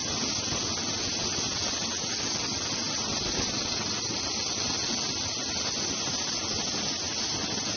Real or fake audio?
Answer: real